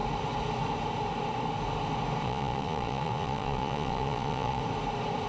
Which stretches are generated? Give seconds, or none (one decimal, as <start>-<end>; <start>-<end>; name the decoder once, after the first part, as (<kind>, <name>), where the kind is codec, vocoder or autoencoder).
2.2-4.6 (vocoder, Vocos)